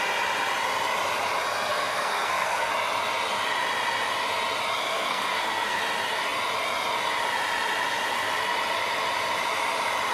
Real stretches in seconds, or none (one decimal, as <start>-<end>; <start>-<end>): 0.0-1.7; 2.7-4.8; 5.8-10.1